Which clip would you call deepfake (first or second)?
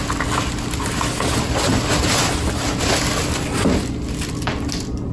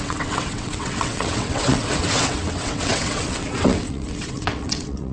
second